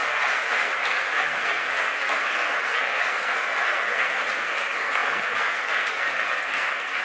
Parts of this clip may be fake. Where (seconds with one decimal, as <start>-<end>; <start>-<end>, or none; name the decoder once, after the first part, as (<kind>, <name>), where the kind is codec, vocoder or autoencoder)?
0.0-7.0 (codec, SNAC)